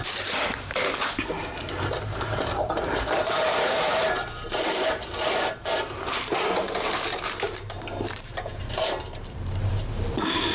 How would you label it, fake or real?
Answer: fake